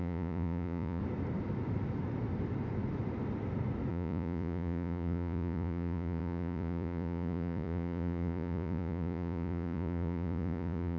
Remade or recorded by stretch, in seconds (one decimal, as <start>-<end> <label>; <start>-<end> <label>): 0.0-1.0 remade; 1.0-3.9 recorded; 3.9-11.0 remade